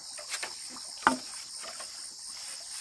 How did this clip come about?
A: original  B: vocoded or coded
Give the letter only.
A